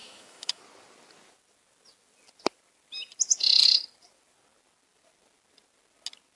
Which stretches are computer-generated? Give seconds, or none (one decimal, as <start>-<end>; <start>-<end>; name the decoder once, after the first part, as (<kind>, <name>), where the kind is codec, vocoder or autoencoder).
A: 0.0-0.6 (autoencoder, DAC-VAE)